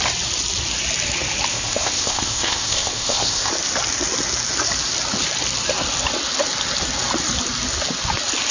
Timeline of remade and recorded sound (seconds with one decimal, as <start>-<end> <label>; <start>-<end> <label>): 0.0-1.5 recorded; 1.5-3.5 remade; 3.5-8.5 recorded

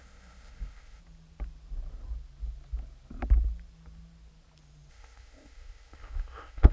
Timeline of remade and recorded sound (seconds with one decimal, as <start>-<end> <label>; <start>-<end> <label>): 0.0-1.0 remade; 1.0-4.9 recorded; 4.9-6.7 remade